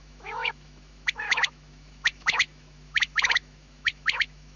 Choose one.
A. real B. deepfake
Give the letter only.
B